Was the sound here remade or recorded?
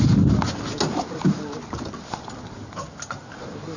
recorded